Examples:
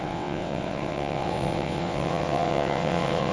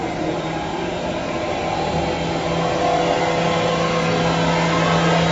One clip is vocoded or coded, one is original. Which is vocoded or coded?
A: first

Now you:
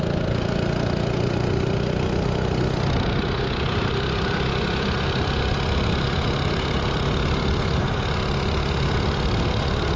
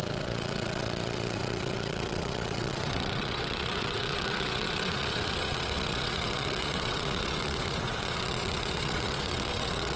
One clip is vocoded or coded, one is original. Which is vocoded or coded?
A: second